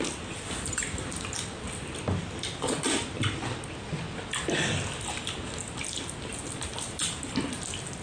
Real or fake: real